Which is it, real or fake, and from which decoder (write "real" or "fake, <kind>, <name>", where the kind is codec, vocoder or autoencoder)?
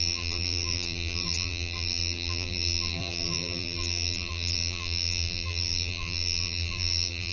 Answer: fake, vocoder, BigVGAN v2